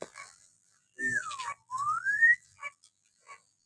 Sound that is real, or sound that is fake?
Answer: fake